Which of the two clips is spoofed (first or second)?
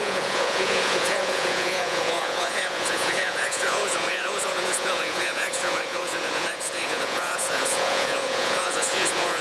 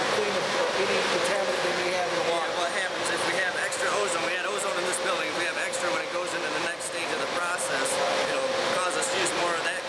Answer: first